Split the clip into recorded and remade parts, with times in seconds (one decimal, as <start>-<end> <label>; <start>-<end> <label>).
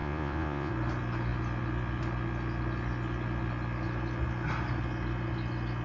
0.0-0.7 remade; 0.7-5.8 recorded